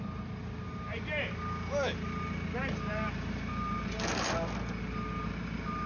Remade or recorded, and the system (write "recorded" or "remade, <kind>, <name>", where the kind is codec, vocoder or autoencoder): recorded